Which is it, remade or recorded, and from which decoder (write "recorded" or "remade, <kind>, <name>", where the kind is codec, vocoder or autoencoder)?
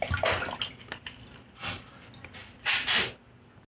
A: recorded